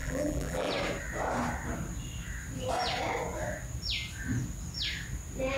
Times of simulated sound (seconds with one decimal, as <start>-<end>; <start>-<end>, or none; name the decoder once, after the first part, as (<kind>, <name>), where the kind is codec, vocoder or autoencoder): 0.0-0.7 (vocoder, BigVGAN v2)